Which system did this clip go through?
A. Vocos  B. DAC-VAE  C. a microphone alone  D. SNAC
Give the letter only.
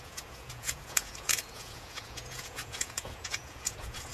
A